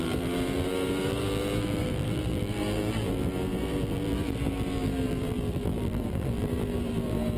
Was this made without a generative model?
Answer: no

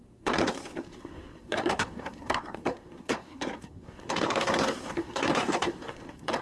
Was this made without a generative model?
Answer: no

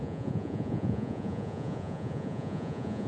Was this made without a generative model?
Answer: no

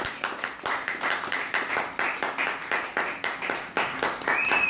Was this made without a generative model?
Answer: yes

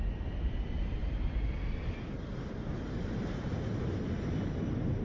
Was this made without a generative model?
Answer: yes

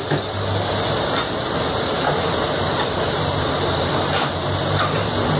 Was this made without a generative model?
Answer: no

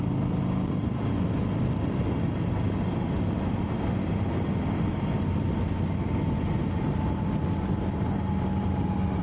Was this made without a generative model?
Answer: yes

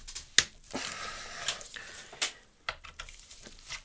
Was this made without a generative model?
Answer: yes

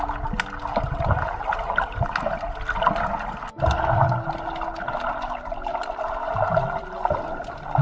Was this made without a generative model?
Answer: yes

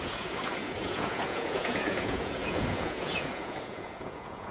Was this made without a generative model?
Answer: no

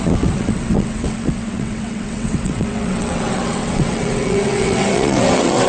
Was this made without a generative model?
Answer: no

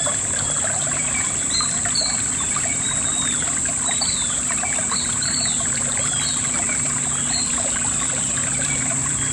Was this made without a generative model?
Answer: no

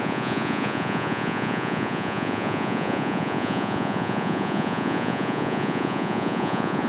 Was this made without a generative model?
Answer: no